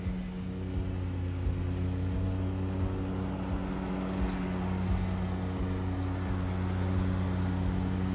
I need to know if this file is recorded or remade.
recorded